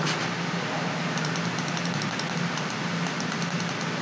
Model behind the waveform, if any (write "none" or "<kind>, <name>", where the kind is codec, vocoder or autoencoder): none